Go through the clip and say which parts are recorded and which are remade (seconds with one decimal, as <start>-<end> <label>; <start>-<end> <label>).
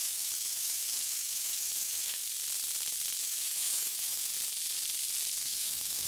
0.0-2.2 remade; 2.2-3.2 recorded; 3.2-4.3 remade; 4.3-5.4 recorded; 5.4-6.1 remade